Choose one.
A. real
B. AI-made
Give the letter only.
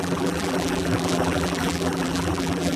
B